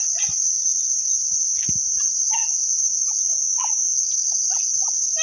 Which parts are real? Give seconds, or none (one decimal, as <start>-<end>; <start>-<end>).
0.0-5.2